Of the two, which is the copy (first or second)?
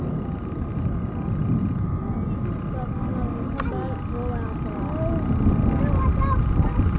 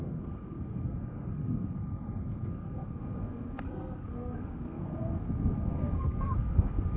second